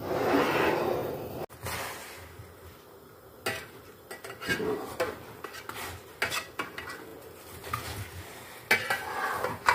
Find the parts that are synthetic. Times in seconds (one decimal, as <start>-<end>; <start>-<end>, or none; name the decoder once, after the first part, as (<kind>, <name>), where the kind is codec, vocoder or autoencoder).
none